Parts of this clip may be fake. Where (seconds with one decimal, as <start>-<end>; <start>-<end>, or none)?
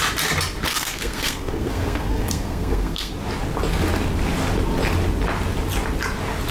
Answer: 0.7-3.1